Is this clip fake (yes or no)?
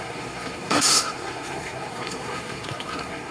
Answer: yes